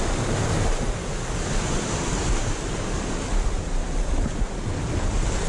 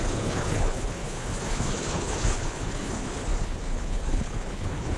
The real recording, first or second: first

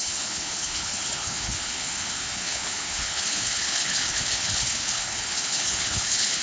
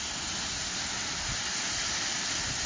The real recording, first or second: second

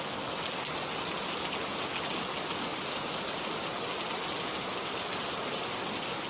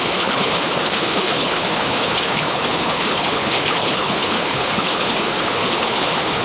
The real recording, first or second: first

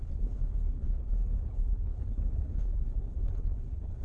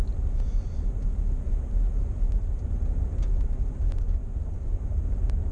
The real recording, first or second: second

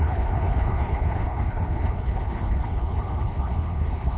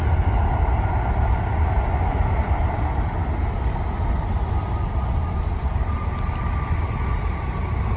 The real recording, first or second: second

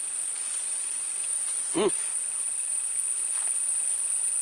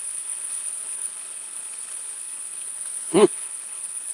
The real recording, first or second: first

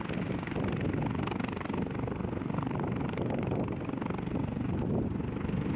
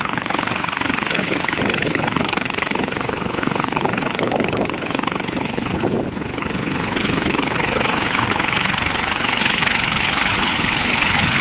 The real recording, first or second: first